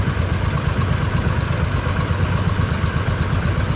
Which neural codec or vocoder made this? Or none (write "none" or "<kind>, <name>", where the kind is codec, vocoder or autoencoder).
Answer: none